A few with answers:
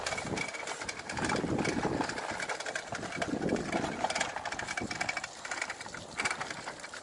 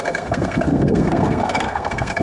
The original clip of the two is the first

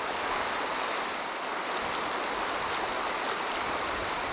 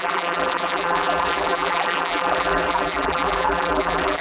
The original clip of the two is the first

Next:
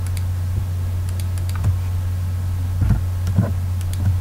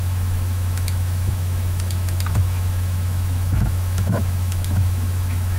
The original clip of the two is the first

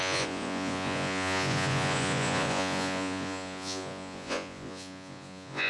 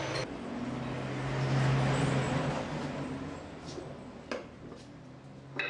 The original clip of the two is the second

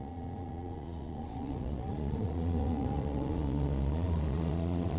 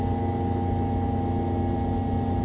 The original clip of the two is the second